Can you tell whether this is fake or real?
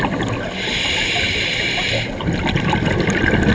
real